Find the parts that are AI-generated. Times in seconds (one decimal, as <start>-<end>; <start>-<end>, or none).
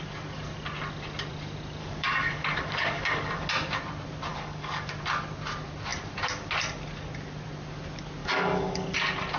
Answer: 1.8-3.5; 4.3-4.9; 8.2-8.9